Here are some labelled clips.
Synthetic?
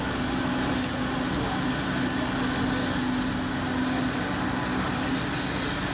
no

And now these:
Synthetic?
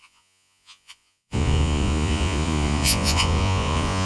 yes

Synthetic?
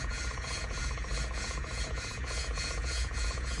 yes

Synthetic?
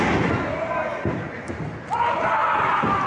no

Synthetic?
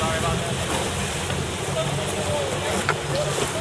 no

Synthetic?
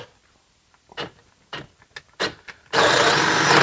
no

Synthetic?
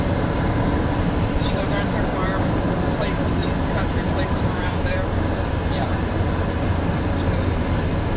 no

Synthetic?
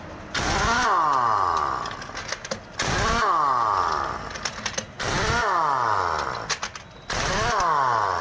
no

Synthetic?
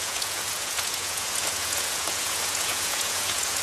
yes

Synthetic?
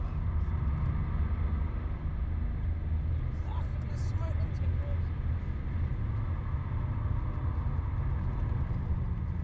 no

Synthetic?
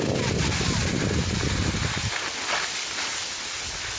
no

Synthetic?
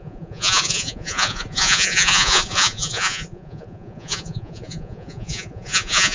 yes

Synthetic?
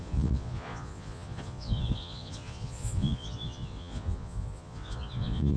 yes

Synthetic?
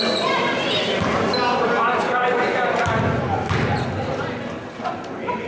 no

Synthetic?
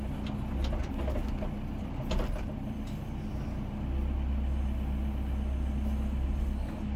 no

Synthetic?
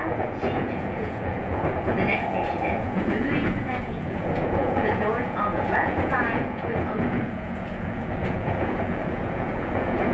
yes